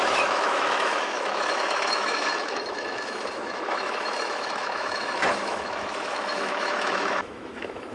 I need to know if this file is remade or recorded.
remade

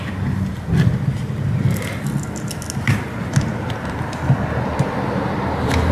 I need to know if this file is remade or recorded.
recorded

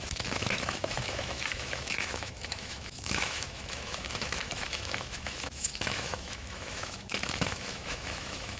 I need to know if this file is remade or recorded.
remade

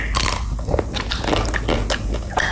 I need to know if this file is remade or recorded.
recorded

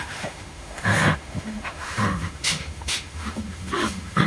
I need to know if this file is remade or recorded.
remade